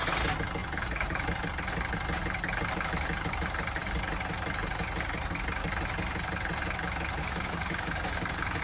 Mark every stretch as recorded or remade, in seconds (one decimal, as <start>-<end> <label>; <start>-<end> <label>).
0.0-7.2 recorded; 7.2-8.6 remade